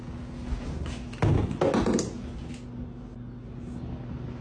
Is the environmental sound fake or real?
real